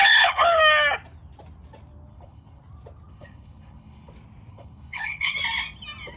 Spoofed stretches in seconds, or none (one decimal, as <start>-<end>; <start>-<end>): 0.0-0.6; 2.1-2.6; 3.1-4.1; 4.5-5.3